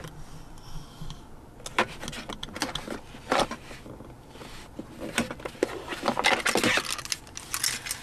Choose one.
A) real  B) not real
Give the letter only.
A